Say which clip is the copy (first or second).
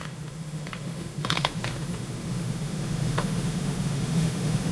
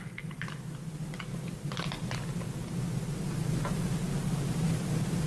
first